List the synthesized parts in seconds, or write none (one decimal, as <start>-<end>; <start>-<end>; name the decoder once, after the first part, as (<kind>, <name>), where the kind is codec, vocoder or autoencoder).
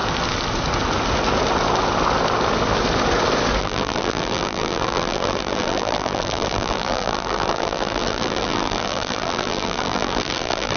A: 3.6-10.8 (vocoder, BigVGAN v2)